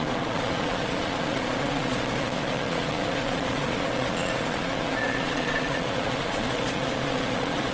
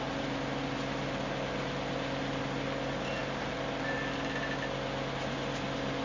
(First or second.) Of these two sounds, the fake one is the first